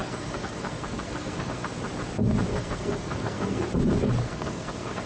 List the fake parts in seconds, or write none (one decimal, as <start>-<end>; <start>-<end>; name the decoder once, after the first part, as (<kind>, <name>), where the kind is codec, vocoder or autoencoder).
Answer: 0.0-1.7 (codec, SNAC); 2.5-3.7; 4.2-5.1